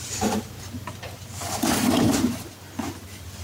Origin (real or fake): real